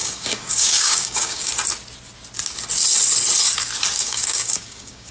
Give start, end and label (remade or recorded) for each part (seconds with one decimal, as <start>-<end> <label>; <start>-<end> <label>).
0.0-1.5 remade; 1.5-4.0 recorded; 4.0-5.1 remade